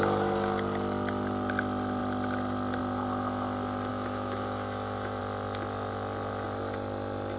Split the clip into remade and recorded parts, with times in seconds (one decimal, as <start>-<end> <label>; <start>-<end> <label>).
0.0-3.9 recorded; 3.9-5.2 remade; 5.2-7.4 recorded